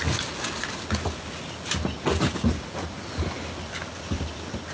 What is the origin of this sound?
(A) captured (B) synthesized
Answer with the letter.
A